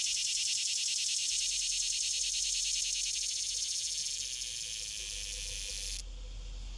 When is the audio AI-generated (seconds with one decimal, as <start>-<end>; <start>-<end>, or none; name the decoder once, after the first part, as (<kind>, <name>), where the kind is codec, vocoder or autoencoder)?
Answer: 1.2-2.8 (vocoder, BigVGAN v2)